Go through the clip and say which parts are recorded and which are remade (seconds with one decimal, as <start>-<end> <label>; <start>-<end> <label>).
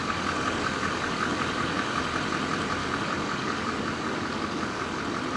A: 0.0-2.0 remade; 2.0-2.8 recorded; 2.8-5.0 remade; 5.0-5.4 recorded